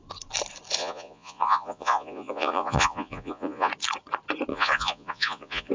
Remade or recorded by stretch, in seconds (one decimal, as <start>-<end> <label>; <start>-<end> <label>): 0.0-0.8 recorded; 0.8-3.7 remade; 3.7-4.5 recorded; 4.5-5.7 remade